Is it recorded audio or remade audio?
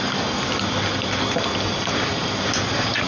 recorded